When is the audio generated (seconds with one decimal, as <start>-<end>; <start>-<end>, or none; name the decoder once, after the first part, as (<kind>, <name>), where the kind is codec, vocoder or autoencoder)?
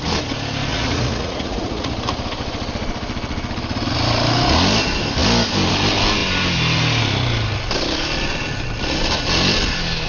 0.7-1.9 (vocoder, Vocos)